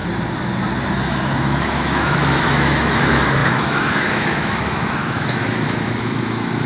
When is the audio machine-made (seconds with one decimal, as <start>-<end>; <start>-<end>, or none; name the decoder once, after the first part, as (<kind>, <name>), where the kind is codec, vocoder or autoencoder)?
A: 0.9-6.7 (autoencoder, DAC-VAE)